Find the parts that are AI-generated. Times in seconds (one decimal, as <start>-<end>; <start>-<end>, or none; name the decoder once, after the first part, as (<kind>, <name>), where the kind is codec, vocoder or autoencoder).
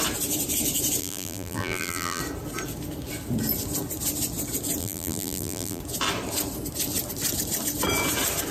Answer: 1.0-2.2 (vocoder, BigVGAN v2); 4.8-5.8